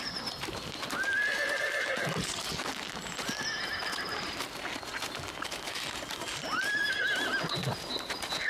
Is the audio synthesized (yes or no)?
no